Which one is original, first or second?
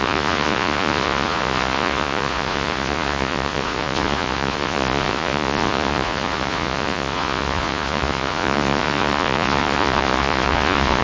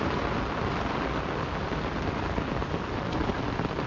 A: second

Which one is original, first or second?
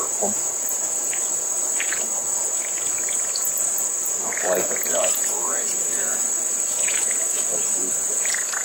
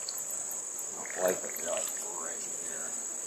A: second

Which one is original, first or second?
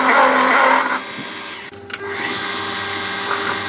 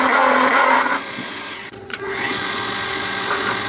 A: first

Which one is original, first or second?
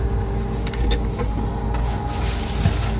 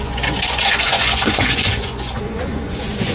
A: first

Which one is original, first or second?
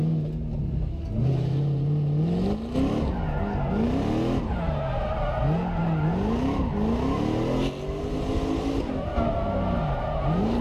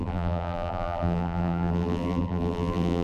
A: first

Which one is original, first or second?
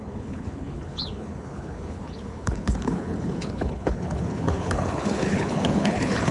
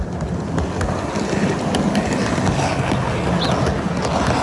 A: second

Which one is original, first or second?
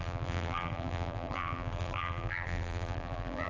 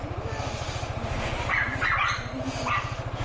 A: second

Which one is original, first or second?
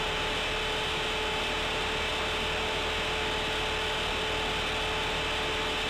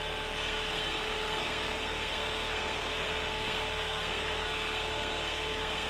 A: first